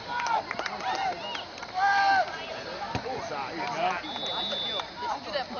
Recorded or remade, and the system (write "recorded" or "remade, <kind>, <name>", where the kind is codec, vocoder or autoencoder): recorded